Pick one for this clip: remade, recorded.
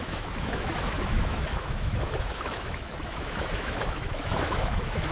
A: remade